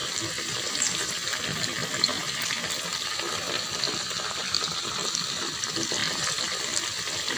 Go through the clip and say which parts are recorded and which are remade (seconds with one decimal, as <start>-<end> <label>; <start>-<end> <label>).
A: 0.0-7.4 recorded